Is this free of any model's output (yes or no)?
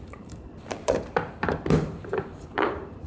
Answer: no